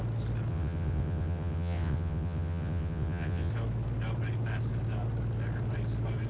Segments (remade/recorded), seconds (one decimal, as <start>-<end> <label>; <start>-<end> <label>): 0.0-0.5 recorded; 0.5-3.5 remade; 3.5-6.3 recorded